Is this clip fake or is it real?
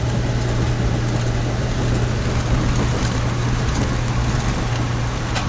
real